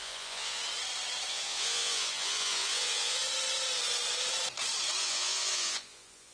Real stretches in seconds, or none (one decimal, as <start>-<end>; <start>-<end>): 0.6-1.3; 3.2-5.0